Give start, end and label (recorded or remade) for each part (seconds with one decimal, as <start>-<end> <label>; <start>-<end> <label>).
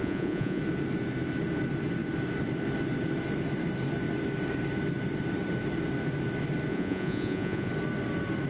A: 0.0-0.6 remade; 0.6-6.7 recorded; 6.7-7.7 remade; 7.7-8.5 recorded